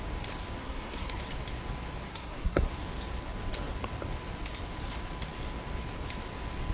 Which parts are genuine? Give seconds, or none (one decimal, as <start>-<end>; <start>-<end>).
0.0-0.6; 1.2-2.1; 2.7-6.7